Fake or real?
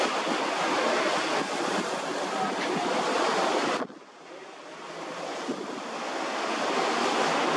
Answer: real